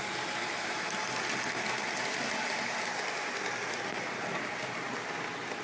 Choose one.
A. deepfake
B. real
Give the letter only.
B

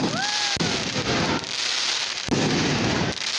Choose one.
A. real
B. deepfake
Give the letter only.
A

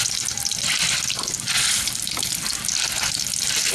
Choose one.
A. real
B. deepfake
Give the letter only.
A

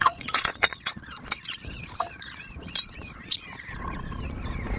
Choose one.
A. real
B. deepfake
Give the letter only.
B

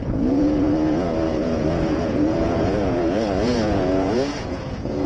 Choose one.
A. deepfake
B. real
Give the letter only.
A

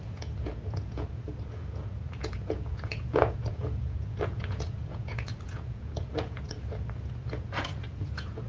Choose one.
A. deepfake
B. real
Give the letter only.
A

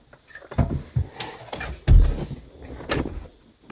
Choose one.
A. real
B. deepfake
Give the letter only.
A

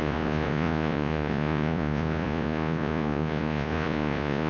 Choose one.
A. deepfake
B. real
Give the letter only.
A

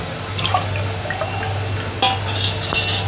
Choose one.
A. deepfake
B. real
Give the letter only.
B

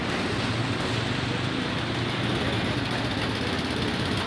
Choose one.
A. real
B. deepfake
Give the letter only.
A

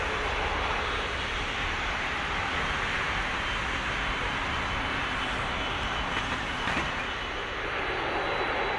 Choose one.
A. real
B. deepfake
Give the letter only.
A